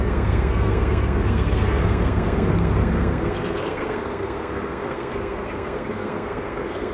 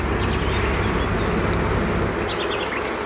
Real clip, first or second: second